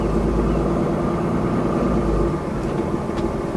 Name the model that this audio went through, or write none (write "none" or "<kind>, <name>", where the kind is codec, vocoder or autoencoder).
none